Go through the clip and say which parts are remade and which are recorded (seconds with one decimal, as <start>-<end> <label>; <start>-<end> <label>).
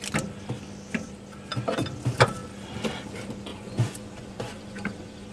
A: 0.0-3.5 recorded; 3.5-5.3 remade